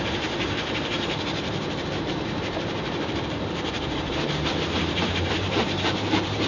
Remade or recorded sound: remade